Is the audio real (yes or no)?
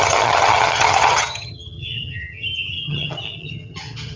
no